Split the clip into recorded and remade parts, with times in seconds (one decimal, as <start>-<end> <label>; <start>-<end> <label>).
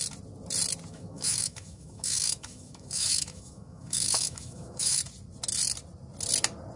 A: 0.0-0.9 recorded; 0.9-5.0 remade; 5.0-6.8 recorded